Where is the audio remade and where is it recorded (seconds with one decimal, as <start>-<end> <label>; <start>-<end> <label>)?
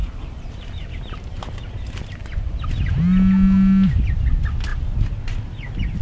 0.0-0.9 remade; 0.9-2.2 recorded; 2.2-2.9 remade; 2.9-6.0 recorded